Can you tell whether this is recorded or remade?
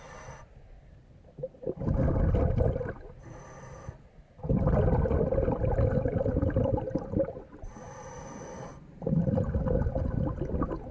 remade